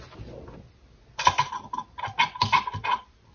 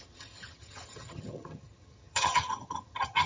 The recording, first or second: first